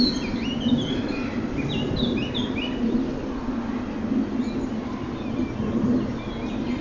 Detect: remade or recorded recorded